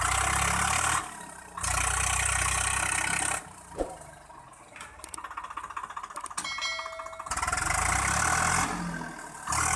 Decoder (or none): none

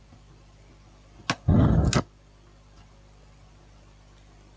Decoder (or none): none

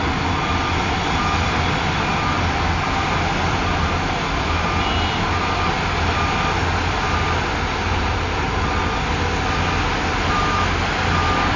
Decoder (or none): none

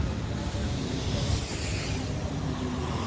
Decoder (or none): none